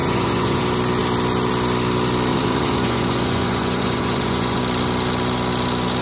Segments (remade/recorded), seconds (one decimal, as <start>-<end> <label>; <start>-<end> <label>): 0.0-0.6 remade; 0.6-2.3 recorded; 2.3-4.6 remade; 4.6-6.0 recorded